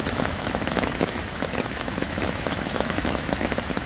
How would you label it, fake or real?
fake